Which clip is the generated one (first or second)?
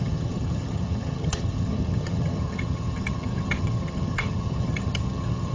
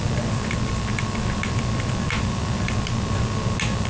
first